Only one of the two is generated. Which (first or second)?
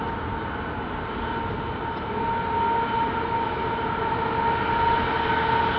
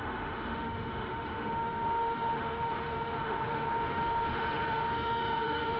second